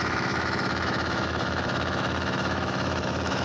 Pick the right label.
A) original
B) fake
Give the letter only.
B